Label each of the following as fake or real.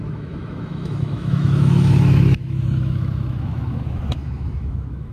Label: fake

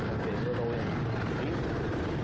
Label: real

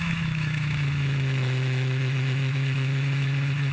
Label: fake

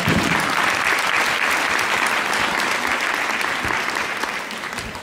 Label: real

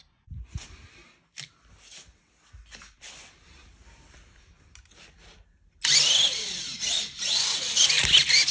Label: real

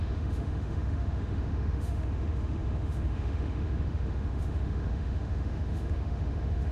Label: fake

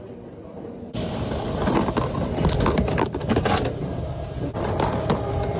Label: real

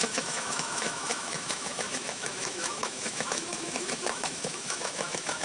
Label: fake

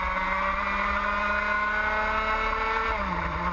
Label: real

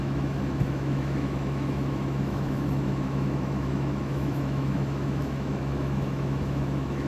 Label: fake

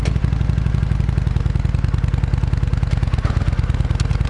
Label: real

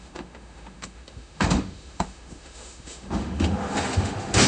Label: fake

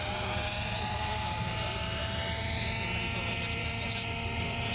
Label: real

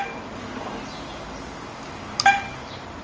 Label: real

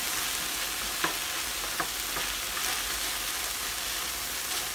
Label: real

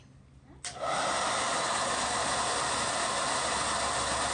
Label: real